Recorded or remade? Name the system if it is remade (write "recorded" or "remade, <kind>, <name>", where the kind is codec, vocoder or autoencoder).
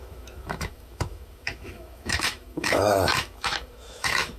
remade, autoencoder, DAC-VAE